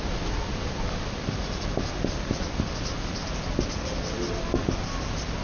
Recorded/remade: recorded